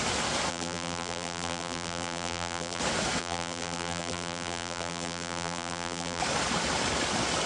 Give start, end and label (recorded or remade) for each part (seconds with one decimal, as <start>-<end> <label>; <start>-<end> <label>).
0.0-0.5 recorded; 0.5-2.8 remade; 2.8-3.2 recorded; 3.2-6.2 remade; 6.2-7.5 recorded